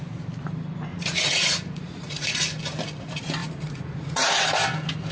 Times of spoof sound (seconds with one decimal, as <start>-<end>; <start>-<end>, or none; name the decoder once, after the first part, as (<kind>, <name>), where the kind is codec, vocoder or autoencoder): 0.9-2.4 (vocoder, Vocos); 3.4-4.3

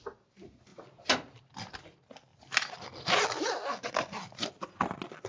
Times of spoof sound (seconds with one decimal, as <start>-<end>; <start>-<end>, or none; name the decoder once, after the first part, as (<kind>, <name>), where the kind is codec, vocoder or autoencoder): none